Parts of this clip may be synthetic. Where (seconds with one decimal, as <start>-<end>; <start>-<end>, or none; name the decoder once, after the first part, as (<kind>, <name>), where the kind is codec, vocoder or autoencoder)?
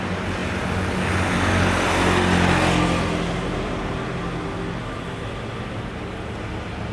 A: none